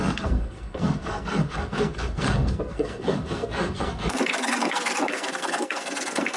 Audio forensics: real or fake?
fake